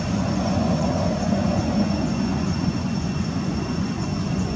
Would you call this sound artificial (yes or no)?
yes